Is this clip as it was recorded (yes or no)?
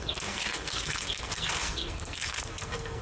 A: no